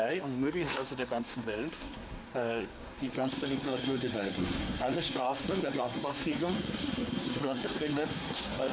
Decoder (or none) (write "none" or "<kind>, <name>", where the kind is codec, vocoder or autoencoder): codec, SNAC